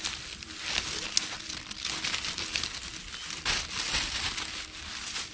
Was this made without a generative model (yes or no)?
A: yes